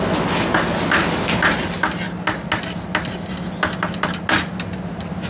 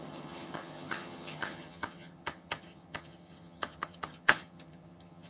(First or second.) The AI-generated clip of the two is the second